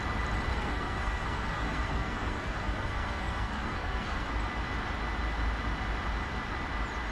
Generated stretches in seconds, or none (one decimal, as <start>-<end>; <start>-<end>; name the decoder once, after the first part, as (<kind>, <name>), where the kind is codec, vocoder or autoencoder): 0.5-4.3 (codec, SNAC)